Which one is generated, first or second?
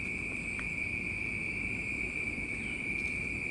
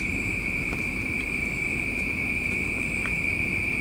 second